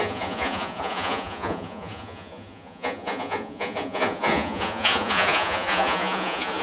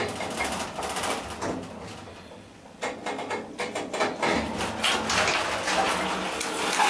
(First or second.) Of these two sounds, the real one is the second